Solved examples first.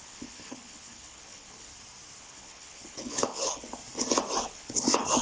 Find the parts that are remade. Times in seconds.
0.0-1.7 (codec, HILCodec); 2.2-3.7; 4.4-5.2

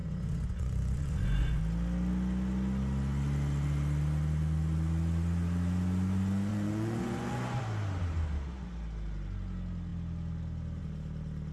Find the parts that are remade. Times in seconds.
0.0-1.6 (vocoder, Vocos); 6.5-7.6